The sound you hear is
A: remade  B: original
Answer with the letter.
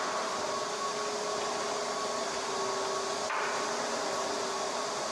B